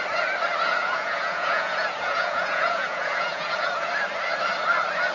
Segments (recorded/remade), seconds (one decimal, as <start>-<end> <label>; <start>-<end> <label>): 0.0-0.8 recorded; 0.8-3.9 remade; 3.9-5.1 recorded